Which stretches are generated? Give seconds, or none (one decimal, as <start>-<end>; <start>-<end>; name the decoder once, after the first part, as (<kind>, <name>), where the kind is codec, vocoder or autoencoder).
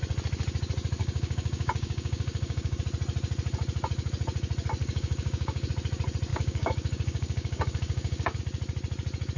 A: 1.0-2.8 (codec, DAC); 4.8-5.7; 6.3-8.4